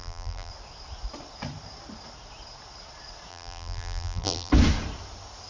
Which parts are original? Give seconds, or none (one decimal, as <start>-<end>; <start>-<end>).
0.5-3.3; 4.5-5.5